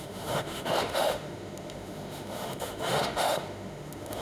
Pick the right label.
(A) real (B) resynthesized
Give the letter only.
B